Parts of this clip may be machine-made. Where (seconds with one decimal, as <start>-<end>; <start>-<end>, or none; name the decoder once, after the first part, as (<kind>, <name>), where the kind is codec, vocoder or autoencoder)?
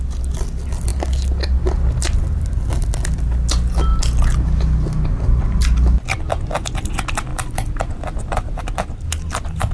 7.3-8.6 (vocoder, BigVGAN v2)